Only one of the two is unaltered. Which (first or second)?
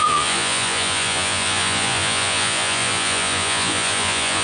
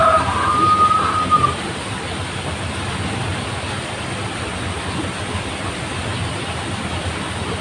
second